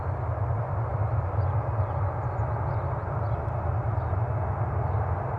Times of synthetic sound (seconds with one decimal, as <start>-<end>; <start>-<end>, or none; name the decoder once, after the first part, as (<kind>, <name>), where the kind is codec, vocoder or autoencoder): none